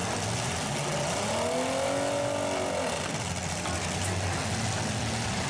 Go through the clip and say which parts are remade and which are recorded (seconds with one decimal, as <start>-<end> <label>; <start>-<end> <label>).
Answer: 0.0-5.5 recorded